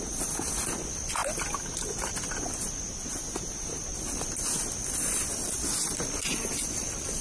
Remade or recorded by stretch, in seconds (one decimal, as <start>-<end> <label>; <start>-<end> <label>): 0.0-7.2 recorded

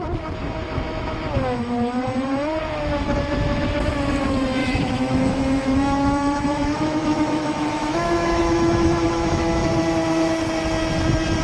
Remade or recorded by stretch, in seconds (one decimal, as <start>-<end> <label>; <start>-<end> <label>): 0.0-4.6 recorded; 4.6-9.7 remade; 9.7-11.4 recorded

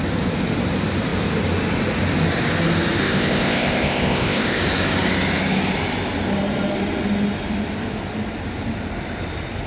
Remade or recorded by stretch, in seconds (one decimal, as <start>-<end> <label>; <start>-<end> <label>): 0.0-3.0 recorded; 3.0-4.6 remade; 4.6-9.7 recorded

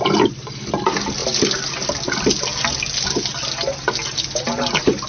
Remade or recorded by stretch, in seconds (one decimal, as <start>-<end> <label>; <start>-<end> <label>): 0.0-5.1 recorded